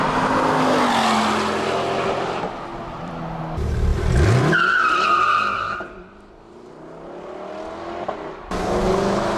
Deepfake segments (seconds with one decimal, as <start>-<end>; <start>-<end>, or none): 2.7-3.4; 3.9-5.4